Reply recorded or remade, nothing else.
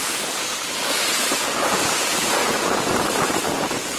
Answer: remade